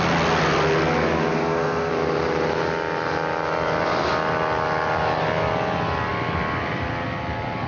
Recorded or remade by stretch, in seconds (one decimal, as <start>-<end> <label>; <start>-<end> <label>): 0.0-1.3 recorded; 1.3-1.9 remade; 1.9-7.7 recorded